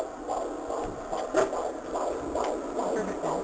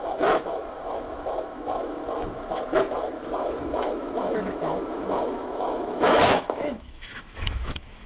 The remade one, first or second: second